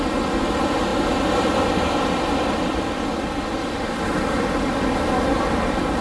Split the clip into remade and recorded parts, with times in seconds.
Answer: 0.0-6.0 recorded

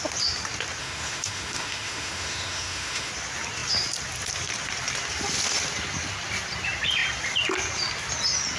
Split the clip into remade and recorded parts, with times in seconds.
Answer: 0.0-0.8 recorded; 0.8-3.1 remade; 3.1-8.6 recorded

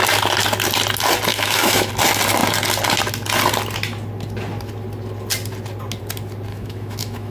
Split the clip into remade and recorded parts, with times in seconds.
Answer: 0.0-1.3 recorded; 1.3-1.9 remade; 1.9-6.5 recorded; 6.5-7.3 remade

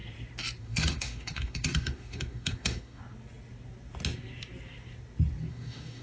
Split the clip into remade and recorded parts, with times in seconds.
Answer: 0.0-0.6 recorded; 0.6-3.0 remade; 3.0-5.5 recorded; 5.5-6.0 remade

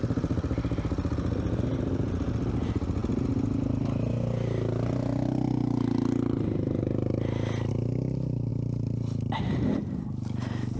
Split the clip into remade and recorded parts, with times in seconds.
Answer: 0.0-10.8 recorded

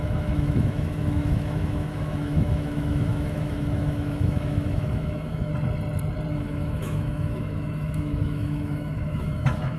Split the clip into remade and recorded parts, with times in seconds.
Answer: 0.0-5.5 remade; 5.5-6.3 recorded; 6.3-9.8 remade

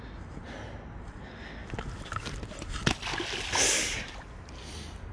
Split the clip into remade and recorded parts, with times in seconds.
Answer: 0.0-5.1 recorded